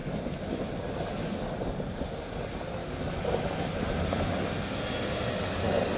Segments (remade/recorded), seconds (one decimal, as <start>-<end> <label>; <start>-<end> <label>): 0.0-6.0 recorded

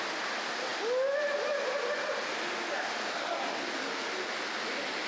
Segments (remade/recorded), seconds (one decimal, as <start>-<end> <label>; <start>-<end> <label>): 0.0-5.1 recorded